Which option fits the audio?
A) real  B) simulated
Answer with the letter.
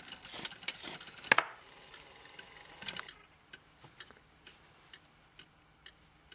A